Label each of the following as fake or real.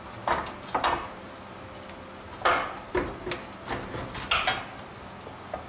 real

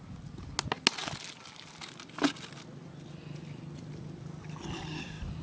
real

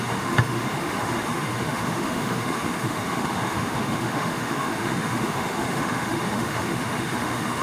fake